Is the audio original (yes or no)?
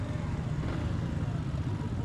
yes